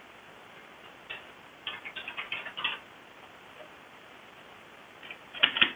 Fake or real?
fake